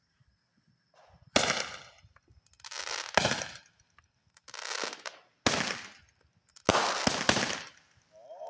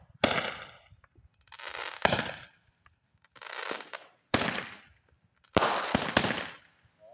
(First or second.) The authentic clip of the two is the first